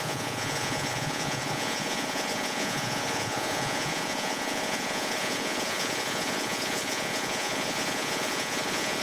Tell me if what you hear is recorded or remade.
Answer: remade